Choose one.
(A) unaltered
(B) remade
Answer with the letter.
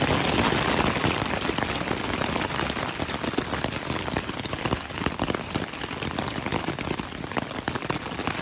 A